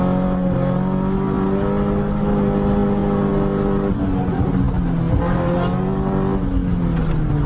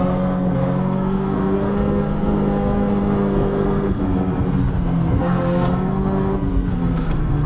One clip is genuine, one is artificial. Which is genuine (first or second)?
first